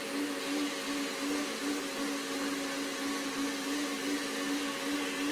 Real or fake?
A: real